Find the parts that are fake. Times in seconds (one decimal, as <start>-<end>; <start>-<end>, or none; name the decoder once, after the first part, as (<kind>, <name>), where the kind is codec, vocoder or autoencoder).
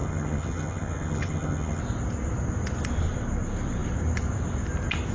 0.0-1.8 (vocoder, HiFi-GAN)